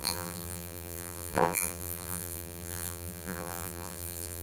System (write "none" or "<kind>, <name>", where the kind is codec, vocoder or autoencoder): vocoder, BigVGAN v2